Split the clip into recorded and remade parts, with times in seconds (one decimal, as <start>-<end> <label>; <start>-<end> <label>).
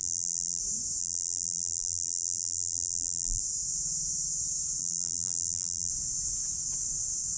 0.0-0.6 remade; 0.6-1.0 recorded; 1.0-3.4 remade; 3.4-4.8 recorded; 4.8-5.9 remade; 5.9-7.4 recorded